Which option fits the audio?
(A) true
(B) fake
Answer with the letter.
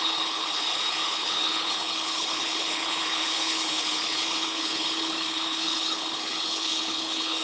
B